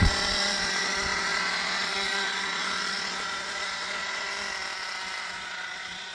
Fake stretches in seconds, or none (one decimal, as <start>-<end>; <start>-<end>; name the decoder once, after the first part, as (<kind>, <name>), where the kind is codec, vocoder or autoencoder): 0.0-4.3 (vocoder, Vocos); 5.2-6.1